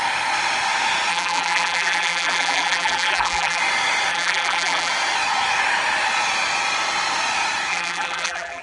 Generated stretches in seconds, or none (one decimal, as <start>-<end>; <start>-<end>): 1.1-3.6; 4.1-4.9; 7.7-8.6